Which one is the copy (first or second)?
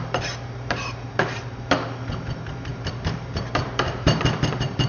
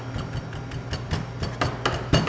first